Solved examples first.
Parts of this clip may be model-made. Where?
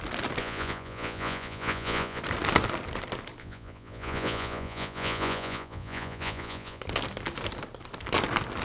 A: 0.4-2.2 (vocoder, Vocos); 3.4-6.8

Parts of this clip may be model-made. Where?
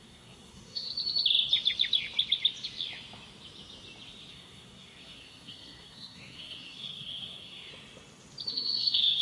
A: 0.0-0.9 (codec, SNAC); 4.3-7.7; 8.5-9.2